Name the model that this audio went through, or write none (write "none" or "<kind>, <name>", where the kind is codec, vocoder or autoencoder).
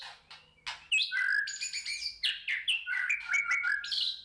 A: none